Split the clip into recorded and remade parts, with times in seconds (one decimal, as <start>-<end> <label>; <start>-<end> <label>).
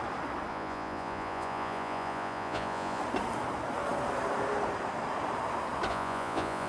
0.0-0.5 recorded; 0.5-3.0 remade; 3.0-5.9 recorded; 5.9-6.7 remade